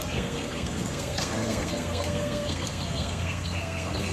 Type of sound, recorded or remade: remade